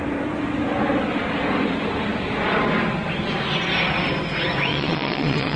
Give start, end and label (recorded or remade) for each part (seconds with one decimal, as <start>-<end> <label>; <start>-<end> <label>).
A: 0.0-4.7 recorded; 4.7-5.6 remade